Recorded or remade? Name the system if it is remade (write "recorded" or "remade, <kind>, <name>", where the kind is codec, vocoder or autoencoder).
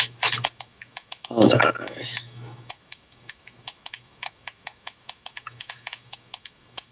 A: remade, autoencoder, DAC-VAE